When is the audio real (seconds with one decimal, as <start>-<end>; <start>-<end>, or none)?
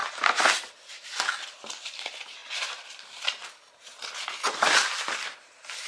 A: 0.0-1.8; 2.4-4.5